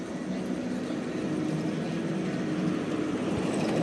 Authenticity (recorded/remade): recorded